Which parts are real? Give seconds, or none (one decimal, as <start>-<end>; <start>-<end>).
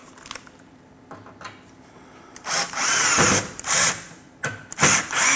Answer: 0.0-2.7